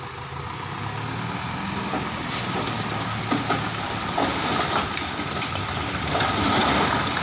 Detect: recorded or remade recorded